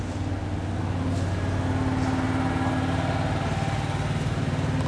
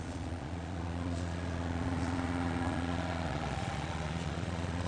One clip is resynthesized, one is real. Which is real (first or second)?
first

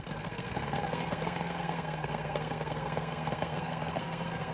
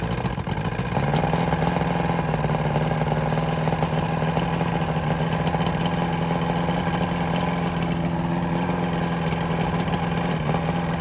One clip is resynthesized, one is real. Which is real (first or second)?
second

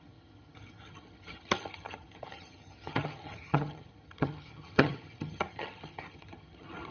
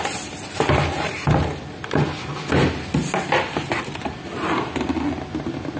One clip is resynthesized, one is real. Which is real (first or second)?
second